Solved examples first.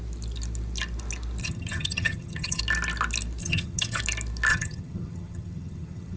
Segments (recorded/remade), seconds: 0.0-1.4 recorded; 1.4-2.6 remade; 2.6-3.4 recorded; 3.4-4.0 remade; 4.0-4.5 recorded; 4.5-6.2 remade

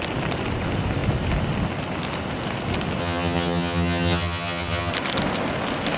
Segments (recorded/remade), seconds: 0.0-3.0 recorded; 3.0-4.9 remade; 4.9-6.0 recorded

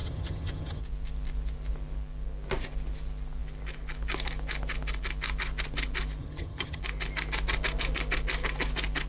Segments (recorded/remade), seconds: 0.0-0.8 remade; 0.8-6.2 recorded; 6.2-6.8 remade; 6.8-9.1 recorded